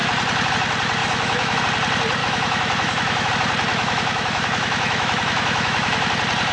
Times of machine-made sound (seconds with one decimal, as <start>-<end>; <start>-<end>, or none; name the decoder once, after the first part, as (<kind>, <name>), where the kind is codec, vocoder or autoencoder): 1.0-1.6 (autoencoder, DAC-VAE); 2.2-3.3; 3.7-6.1